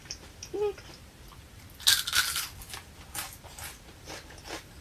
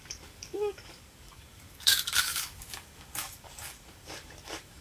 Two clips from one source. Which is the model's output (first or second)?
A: second